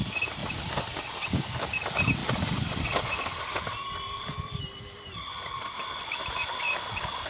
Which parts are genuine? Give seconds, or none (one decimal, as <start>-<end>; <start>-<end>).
0.0-0.4; 1.3-2.2; 6.2-7.3